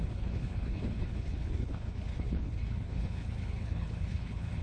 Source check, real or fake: fake